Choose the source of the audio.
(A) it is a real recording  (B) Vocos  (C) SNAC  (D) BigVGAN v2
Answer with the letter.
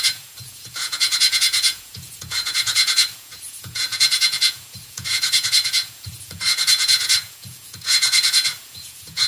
B